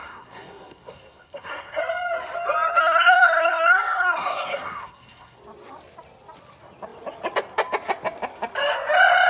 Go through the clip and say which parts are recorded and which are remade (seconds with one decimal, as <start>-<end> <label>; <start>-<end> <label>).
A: 0.0-1.8 remade; 1.8-2.8 recorded; 2.8-5.4 remade; 5.4-9.3 recorded